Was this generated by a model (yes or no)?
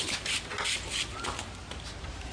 no